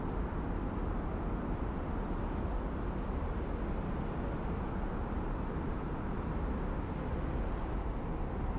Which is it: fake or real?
real